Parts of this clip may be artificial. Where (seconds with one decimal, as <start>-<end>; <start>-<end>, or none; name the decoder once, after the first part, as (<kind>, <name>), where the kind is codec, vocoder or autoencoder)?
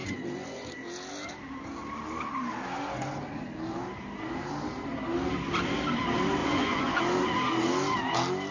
0.0-0.7 (vocoder, Vocos); 6.4-7.0